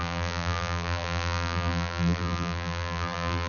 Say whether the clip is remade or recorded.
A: remade